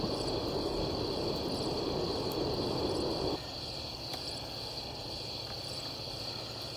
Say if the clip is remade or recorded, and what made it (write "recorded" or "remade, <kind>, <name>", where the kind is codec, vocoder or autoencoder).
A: recorded